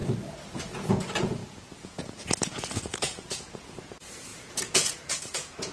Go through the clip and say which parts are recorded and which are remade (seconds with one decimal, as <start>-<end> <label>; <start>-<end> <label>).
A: 0.0-0.9 recorded; 0.9-5.7 remade